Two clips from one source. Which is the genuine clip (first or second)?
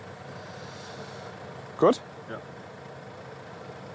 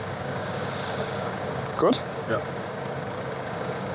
first